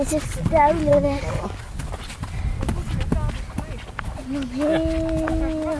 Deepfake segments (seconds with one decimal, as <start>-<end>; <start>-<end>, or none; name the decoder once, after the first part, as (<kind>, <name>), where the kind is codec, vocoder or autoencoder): 0.9-1.8 (codec, DAC)